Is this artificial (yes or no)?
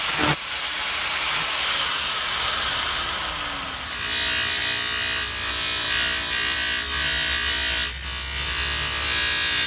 no